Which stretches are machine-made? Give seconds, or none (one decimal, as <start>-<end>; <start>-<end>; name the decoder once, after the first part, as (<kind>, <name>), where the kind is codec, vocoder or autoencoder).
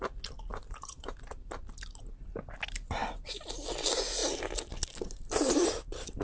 0.5-1.5 (vocoder, BigVGAN v2)